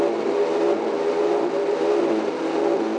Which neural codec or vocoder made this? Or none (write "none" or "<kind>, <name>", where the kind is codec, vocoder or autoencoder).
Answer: none